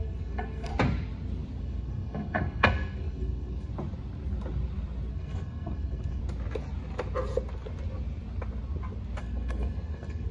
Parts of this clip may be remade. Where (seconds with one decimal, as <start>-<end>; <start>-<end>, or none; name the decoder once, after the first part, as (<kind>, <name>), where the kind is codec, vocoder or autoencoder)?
0.0-0.7 (codec, SNAC); 1.6-3.7; 5.1-6.2; 9.2-10.3